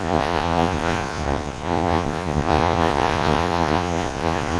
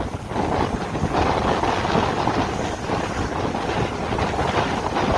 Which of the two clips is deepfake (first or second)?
first